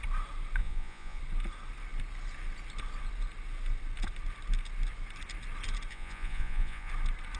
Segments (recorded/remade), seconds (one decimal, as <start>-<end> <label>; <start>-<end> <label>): 0.0-0.6 recorded; 0.6-1.2 remade; 1.2-5.9 recorded; 5.9-6.9 remade; 6.9-7.4 recorded